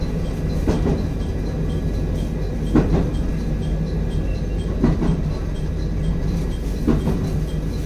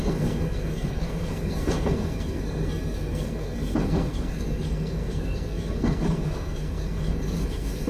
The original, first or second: first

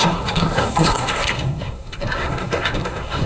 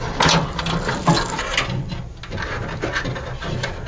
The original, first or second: second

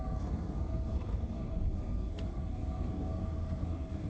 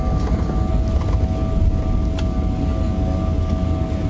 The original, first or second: second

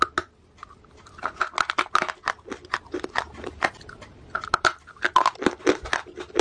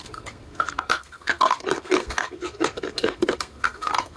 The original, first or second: first